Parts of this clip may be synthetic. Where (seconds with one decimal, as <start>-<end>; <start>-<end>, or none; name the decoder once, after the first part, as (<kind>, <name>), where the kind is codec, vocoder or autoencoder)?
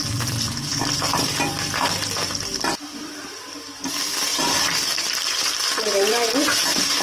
0.0-0.7 (vocoder, BigVGAN v2); 1.2-7.0